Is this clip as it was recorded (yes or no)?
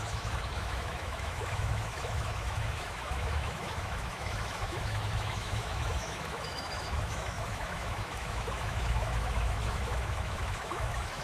no